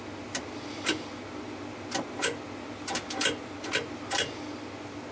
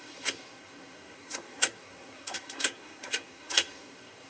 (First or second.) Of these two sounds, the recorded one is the first